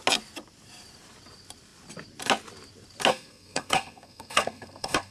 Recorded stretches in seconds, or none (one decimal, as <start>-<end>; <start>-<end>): 0.0-3.1